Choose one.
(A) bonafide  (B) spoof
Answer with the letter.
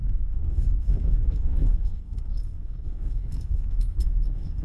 B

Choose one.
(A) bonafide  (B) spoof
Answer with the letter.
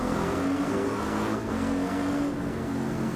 B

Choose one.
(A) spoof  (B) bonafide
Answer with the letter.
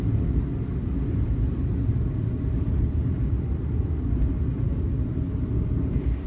B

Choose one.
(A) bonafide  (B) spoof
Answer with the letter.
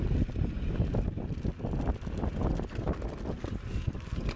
A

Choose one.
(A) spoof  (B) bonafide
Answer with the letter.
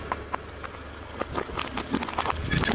B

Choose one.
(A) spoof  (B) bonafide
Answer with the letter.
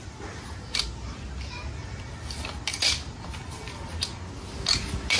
B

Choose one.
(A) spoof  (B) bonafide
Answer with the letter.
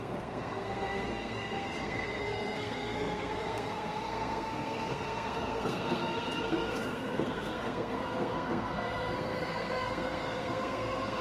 A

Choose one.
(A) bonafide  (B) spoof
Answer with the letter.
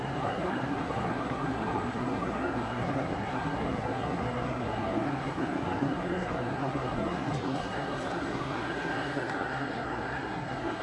B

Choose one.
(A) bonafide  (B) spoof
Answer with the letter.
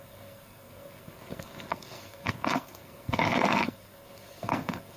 B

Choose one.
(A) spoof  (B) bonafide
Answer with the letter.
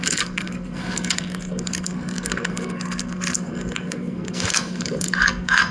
A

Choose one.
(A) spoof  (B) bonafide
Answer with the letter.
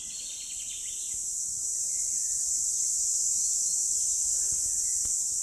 B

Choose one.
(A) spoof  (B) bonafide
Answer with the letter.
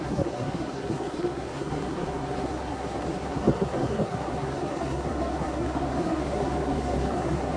A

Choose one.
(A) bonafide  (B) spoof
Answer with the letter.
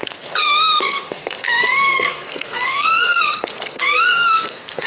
B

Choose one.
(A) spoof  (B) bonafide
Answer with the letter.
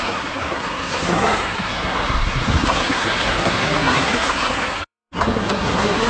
A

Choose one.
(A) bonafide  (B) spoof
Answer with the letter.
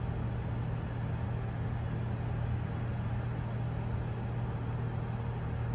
A